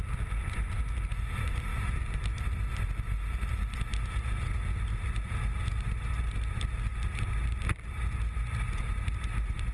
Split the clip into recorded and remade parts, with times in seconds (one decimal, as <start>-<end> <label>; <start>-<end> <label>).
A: 0.0-9.7 recorded